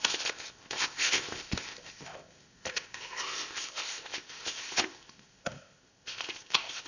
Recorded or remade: remade